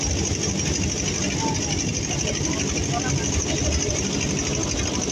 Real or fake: real